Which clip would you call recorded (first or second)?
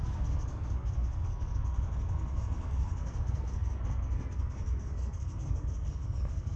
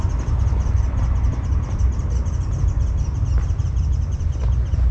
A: second